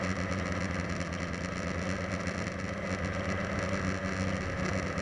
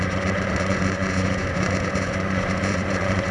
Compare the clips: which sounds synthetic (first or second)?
second